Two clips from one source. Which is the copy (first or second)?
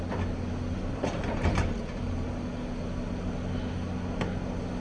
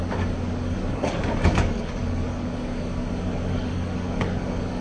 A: second